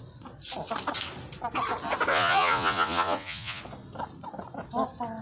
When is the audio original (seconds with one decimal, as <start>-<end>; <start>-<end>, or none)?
0.0-2.1; 3.6-5.2